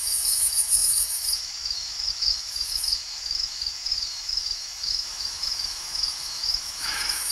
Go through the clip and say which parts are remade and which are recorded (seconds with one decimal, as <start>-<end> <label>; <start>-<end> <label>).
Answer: 0.0-7.3 remade